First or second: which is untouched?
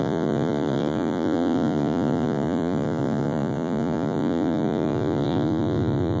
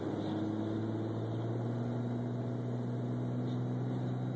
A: second